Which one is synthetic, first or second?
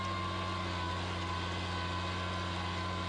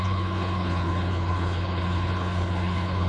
second